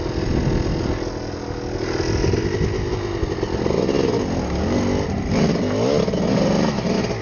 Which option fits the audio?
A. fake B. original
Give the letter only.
B